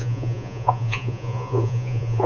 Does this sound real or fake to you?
fake